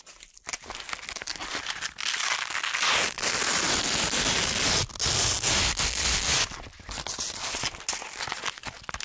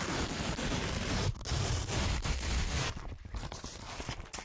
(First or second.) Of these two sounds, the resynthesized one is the second